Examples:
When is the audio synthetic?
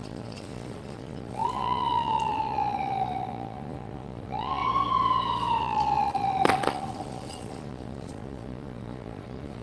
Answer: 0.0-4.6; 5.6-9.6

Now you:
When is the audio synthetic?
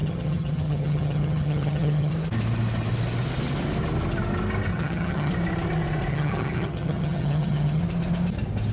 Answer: 0.0-2.1; 4.7-5.3; 6.1-7.8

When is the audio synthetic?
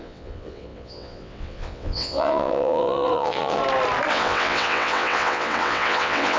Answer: 0.0-3.6; 4.1-6.4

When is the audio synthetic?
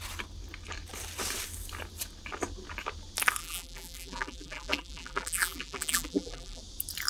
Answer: 3.4-6.6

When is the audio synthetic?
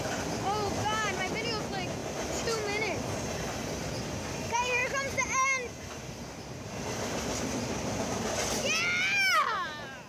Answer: none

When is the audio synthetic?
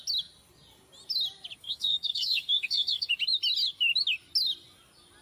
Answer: 1.6-3.1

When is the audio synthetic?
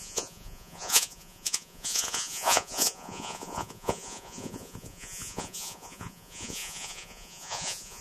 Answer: 0.0-8.0